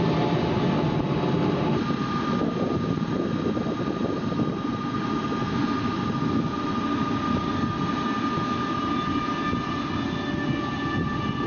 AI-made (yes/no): no